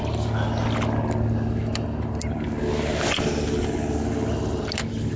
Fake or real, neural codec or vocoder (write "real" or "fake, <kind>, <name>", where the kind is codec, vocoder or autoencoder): real